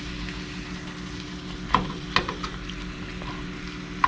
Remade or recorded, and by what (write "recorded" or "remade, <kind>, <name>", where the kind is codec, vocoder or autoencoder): recorded